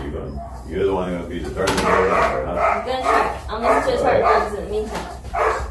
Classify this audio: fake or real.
fake